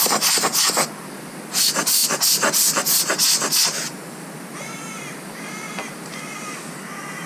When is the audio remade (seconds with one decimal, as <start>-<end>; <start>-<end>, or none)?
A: none